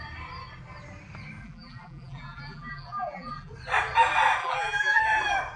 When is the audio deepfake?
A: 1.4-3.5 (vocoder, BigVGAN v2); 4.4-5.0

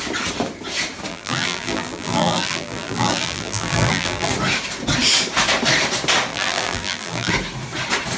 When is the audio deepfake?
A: 1.1-4.3 (vocoder, BigVGAN v2); 6.3-7.3

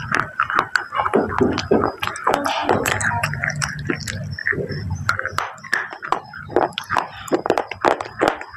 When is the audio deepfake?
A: 2.6-3.9 (vocoder, BigVGAN v2); 4.4-7.6

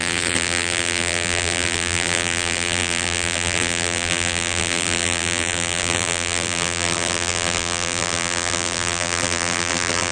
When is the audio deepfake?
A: 0.0-10.1 (vocoder, BigVGAN v2)

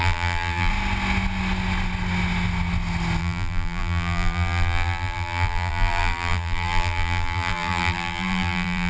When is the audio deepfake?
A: 0.0-0.7 (vocoder, BigVGAN v2); 3.2-8.9

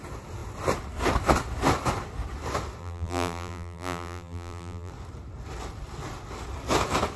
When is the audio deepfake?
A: 2.8-4.9 (vocoder, BigVGAN v2)